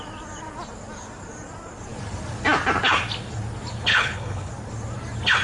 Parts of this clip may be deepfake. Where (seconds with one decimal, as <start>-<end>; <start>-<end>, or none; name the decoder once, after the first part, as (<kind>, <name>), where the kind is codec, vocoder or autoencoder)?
3.9-4.5 (codec, HILCodec)

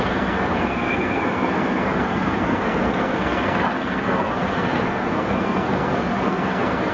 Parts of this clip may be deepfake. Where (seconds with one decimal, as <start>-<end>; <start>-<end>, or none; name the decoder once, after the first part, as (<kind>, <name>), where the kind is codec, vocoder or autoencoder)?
0.0-6.9 (codec, SNAC)

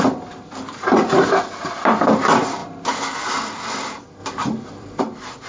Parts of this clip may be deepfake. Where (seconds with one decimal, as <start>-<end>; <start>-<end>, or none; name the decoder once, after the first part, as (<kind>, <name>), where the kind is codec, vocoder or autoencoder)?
0.0-2.6 (vocoder, BigVGAN v2); 3.3-5.5

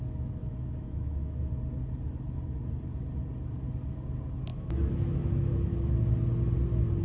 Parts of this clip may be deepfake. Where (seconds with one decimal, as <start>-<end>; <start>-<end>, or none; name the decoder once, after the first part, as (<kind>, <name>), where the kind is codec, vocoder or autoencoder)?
0.4-1.5 (autoencoder, DAC-VAE); 4.5-6.0

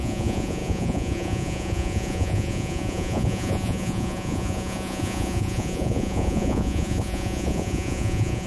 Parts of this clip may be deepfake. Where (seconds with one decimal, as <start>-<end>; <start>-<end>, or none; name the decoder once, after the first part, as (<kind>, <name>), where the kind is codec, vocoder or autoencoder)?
0.0-8.5 (vocoder, Vocos)